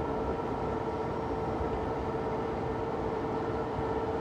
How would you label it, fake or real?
fake